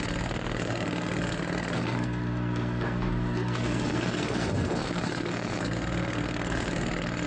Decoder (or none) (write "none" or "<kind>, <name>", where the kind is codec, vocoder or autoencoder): codec, SNAC